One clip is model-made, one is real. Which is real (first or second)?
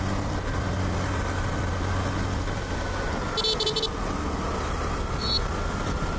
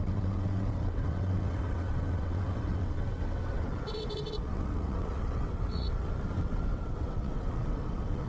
first